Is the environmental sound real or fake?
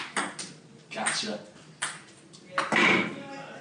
real